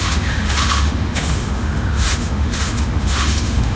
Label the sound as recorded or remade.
remade